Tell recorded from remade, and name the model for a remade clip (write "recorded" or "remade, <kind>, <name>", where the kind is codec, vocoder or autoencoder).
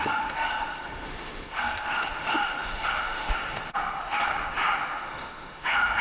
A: remade, autoencoder, DAC-VAE